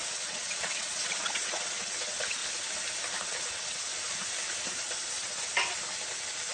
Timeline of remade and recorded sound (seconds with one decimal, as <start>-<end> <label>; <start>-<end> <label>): 0.0-2.4 remade; 2.4-3.3 recorded; 3.3-3.9 remade; 3.9-5.1 recorded; 5.1-5.5 remade; 5.5-6.5 recorded